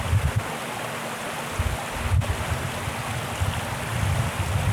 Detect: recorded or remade recorded